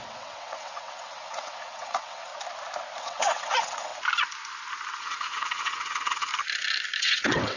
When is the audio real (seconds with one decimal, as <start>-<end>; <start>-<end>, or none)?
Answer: 2.3-3.0; 3.9-5.0; 6.3-7.0